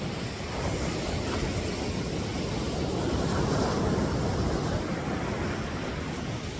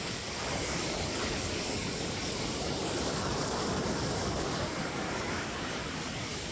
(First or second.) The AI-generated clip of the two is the second